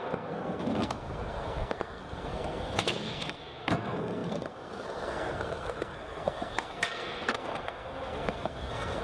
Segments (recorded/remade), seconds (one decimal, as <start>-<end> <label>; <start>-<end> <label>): 0.0-9.0 remade